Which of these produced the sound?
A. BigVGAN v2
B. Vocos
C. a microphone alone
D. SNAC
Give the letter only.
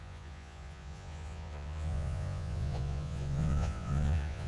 B